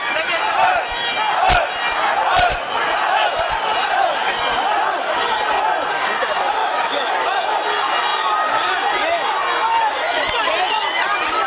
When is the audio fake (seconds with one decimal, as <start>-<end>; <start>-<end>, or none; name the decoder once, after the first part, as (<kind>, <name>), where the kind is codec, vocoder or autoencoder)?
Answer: 6.6-7.1 (autoencoder, DAC-VAE)